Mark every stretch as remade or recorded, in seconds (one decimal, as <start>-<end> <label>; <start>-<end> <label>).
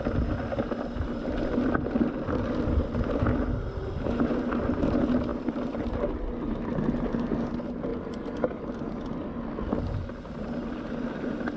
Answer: 0.0-11.6 recorded